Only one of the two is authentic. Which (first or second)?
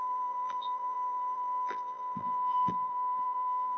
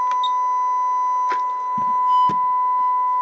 second